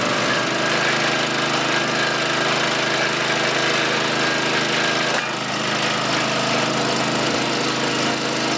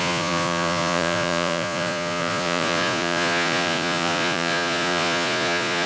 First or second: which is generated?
second